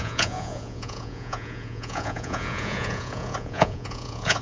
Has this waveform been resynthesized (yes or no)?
yes